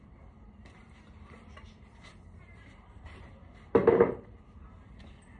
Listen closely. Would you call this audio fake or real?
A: fake